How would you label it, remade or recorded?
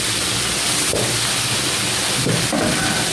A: recorded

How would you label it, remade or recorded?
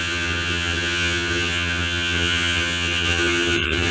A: remade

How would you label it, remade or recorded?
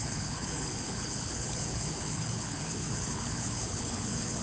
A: remade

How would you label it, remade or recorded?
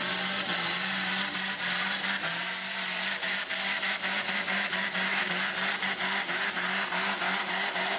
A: recorded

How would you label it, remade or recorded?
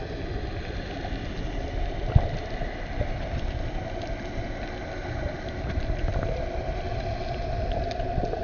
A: recorded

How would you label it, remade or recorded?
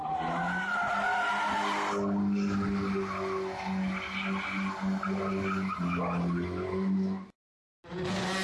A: recorded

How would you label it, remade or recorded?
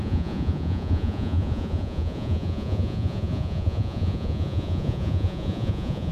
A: remade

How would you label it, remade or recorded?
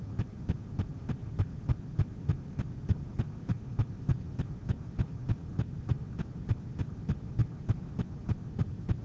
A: recorded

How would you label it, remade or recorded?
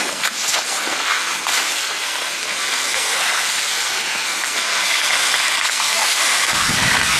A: remade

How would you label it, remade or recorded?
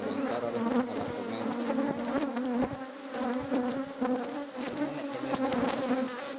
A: recorded